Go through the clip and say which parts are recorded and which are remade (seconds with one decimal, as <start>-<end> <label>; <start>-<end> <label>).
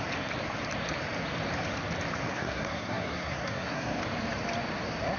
0.0-2.3 recorded; 2.3-4.0 remade; 4.0-5.2 recorded